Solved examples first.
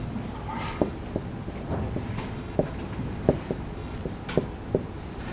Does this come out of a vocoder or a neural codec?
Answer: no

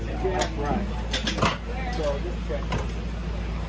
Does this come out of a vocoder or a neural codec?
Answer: no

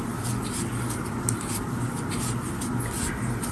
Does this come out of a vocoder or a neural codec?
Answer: no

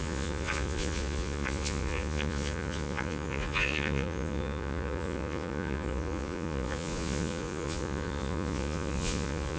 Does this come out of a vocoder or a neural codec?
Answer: yes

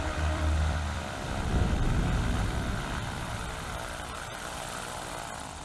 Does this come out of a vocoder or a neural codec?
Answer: yes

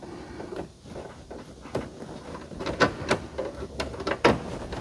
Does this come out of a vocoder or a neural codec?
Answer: no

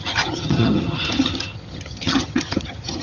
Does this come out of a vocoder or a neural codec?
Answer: yes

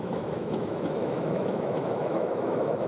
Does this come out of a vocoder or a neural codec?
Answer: yes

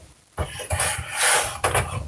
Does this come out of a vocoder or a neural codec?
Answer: yes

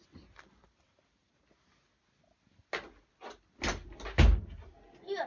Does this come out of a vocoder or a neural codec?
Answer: no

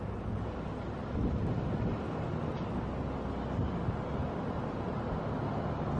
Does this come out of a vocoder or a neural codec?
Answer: no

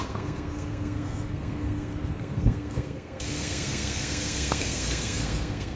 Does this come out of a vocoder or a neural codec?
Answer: yes